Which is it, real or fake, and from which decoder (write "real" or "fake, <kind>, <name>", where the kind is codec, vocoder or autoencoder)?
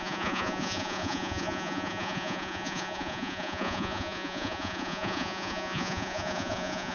fake, vocoder, Vocos